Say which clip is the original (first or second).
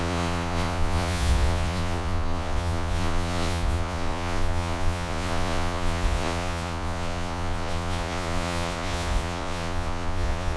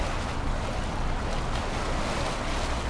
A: second